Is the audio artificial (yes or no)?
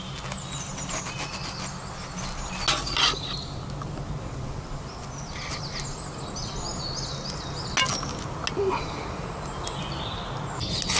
no